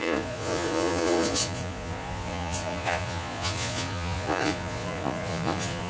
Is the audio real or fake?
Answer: fake